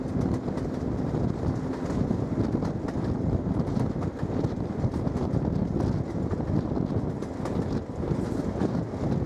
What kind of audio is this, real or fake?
real